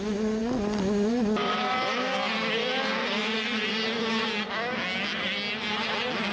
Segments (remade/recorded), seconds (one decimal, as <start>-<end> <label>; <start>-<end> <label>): 0.0-6.3 recorded